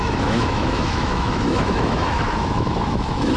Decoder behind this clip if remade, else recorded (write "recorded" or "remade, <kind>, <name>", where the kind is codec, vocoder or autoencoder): remade, autoencoder, DAC-VAE